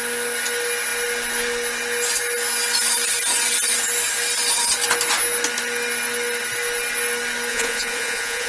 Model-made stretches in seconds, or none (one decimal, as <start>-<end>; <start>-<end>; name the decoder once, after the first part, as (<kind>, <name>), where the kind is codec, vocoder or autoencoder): 7.5-8.5 (vocoder, Vocos)